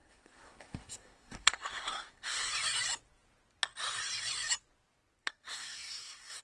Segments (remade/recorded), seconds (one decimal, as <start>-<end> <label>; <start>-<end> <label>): 0.0-2.5 remade; 2.5-5.2 recorded; 5.2-6.4 remade